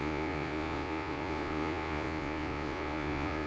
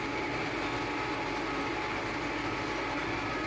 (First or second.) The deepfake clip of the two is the first